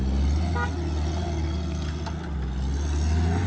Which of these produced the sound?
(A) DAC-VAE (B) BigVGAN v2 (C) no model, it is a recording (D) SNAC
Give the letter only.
C